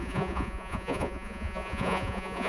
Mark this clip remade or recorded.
remade